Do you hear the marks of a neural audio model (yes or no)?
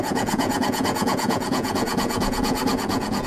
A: yes